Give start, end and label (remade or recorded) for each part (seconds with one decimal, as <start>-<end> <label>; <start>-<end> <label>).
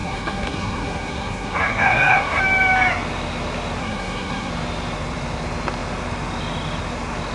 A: 0.0-2.4 remade; 2.4-3.8 recorded; 3.8-4.5 remade; 4.5-7.3 recorded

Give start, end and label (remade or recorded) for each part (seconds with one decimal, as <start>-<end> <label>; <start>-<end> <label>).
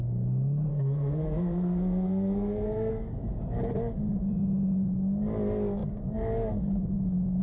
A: 0.0-0.7 recorded; 0.7-2.9 remade; 2.9-7.4 recorded